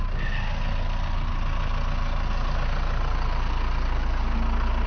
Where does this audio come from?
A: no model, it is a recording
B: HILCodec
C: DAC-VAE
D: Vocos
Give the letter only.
A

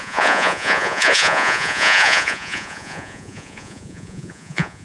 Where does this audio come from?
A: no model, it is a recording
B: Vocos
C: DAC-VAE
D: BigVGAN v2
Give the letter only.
B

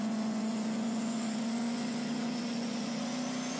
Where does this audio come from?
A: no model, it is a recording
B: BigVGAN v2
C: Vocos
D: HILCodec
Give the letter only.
C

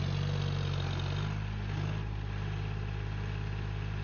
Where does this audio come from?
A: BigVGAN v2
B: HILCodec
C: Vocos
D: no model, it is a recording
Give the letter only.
D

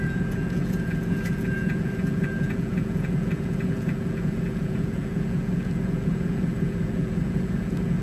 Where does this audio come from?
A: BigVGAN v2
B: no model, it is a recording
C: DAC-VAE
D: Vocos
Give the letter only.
D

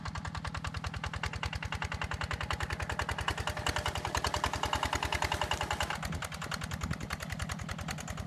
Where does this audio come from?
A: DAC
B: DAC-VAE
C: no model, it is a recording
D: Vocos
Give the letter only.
C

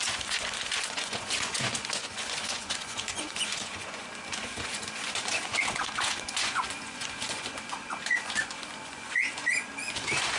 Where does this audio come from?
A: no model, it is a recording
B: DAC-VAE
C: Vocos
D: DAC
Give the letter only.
C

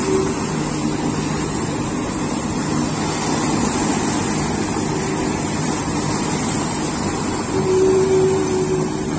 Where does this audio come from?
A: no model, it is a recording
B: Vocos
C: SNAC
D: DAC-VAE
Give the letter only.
A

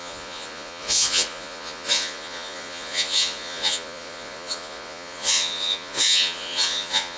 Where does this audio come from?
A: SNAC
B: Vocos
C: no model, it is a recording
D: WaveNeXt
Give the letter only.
B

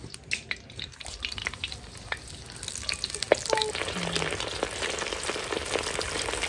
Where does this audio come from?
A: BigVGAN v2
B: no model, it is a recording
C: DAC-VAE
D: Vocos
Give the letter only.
B